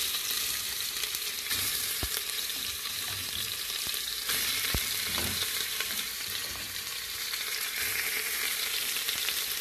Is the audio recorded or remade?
remade